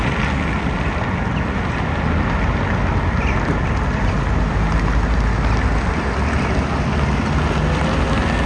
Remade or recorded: recorded